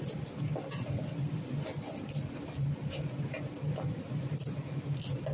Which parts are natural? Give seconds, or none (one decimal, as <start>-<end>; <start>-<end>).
0.0-5.3